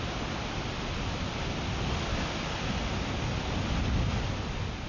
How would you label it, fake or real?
real